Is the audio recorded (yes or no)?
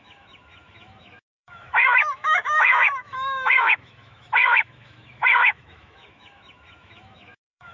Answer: no